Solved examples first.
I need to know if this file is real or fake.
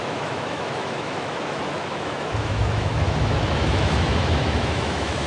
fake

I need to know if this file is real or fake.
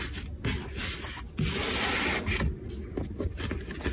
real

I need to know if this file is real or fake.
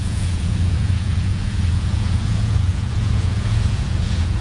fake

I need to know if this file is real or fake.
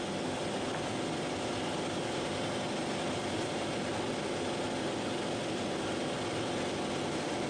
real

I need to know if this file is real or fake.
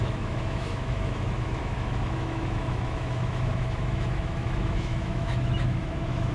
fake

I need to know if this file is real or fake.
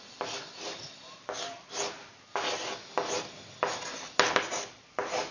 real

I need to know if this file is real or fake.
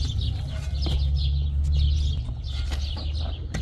real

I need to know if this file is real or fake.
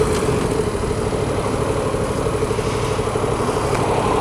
real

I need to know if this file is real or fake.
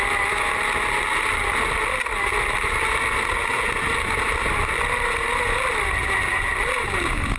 real